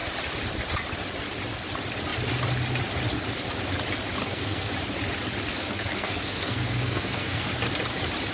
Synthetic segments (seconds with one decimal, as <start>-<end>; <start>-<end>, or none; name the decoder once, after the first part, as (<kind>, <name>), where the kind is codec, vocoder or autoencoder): 4.2-4.7 (codec, SNAC); 5.5-7.5